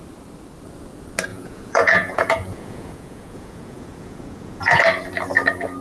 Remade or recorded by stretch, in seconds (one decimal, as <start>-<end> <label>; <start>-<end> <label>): 0.0-1.3 recorded; 1.3-4.8 remade; 4.8-5.8 recorded